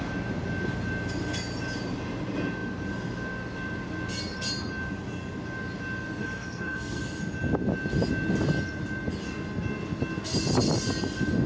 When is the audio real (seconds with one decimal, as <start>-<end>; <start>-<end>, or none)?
0.0-6.2; 7.0-11.5